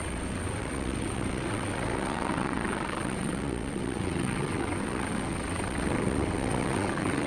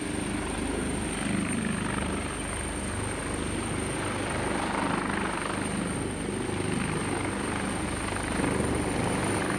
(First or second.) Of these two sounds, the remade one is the first